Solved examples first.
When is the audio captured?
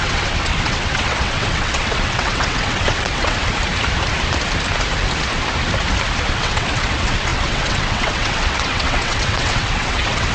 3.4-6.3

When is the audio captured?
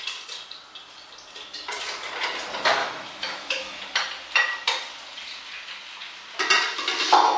0.0-2.8; 3.8-7.4